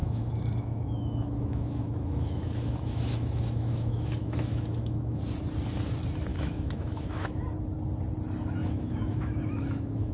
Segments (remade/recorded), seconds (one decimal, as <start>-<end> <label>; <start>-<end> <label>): 0.0-5.2 remade; 5.2-6.3 recorded; 6.3-7.3 remade; 7.3-8.6 recorded; 8.6-10.1 remade